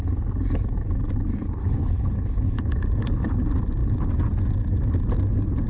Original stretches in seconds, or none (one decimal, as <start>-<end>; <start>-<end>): 0.0-1.6; 2.6-5.7